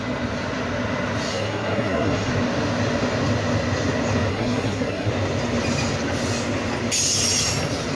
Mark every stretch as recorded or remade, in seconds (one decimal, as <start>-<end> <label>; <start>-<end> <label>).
0.0-1.3 recorded; 1.3-2.3 remade; 2.3-4.3 recorded; 4.3-5.1 remade; 5.1-7.9 recorded